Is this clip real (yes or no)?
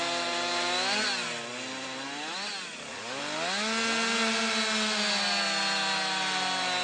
yes